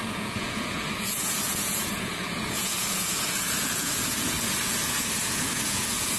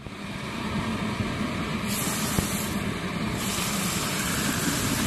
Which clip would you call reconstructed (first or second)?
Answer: first